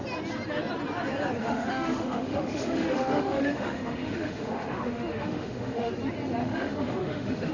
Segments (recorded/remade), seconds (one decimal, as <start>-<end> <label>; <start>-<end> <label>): 0.0-1.4 recorded; 1.4-5.9 remade; 5.9-6.4 recorded; 6.4-7.5 remade